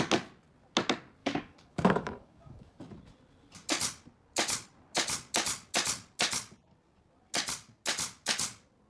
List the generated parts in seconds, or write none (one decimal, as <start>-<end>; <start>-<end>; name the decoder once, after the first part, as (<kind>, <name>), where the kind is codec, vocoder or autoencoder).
1.2-2.8 (codec, DAC)